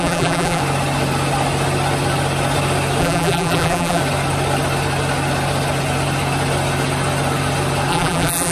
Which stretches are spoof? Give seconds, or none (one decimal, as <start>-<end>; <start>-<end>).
0.0-0.6; 3.0-4.0; 7.9-8.5